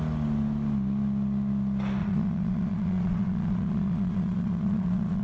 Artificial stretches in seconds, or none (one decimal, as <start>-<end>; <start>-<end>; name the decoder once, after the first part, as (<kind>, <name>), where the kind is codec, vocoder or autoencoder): 2.0-5.2 (vocoder, Vocos)

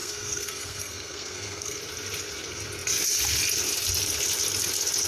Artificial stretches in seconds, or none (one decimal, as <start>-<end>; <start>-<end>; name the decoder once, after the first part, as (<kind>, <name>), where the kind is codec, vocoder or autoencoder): 0.0-1.8 (codec, SNAC)

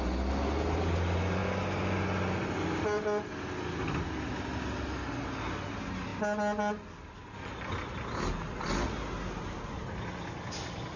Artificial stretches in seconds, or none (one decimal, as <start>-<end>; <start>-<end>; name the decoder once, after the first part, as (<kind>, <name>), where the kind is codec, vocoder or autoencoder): none

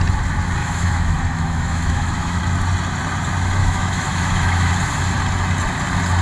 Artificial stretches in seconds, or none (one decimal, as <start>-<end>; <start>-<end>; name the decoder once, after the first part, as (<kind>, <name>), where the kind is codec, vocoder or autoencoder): 0.6-2.4 (autoencoder, DAC-VAE); 3.6-4.7

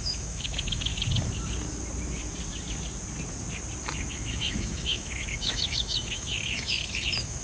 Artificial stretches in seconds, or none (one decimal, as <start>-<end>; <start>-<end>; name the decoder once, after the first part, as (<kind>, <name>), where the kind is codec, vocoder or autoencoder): 0.0-0.9 (autoencoder, DAC-VAE); 4.1-7.4